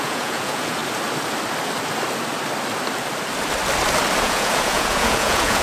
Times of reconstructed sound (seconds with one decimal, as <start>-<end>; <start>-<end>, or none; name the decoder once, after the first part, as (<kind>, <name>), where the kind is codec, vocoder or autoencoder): 0.0-0.8 (vocoder, Vocos); 4.2-5.6